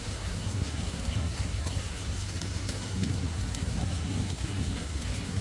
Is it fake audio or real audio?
fake